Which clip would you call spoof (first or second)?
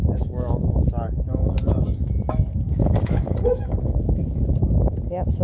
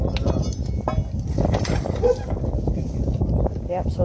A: first